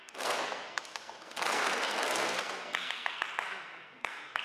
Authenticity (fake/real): fake